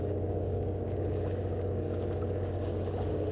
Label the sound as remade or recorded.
remade